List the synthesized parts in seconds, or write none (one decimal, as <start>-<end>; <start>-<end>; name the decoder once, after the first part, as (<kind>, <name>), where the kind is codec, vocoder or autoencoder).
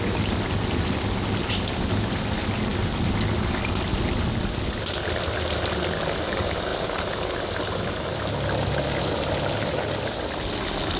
none